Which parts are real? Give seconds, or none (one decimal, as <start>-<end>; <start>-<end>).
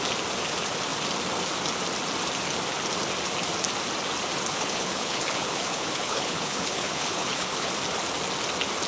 0.0-4.5; 7.7-8.9